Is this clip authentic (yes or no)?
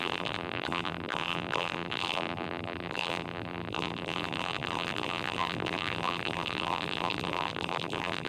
no